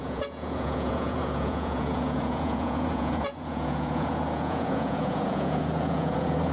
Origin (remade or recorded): remade